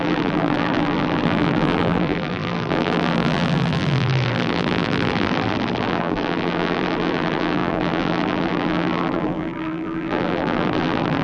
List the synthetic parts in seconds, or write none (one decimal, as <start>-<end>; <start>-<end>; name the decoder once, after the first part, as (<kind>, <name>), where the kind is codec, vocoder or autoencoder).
0.0-11.2 (vocoder, BigVGAN v2)